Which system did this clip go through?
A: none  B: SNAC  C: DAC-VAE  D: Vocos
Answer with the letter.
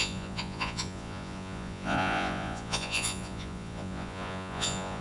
D